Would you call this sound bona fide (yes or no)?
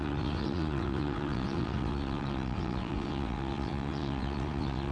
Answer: no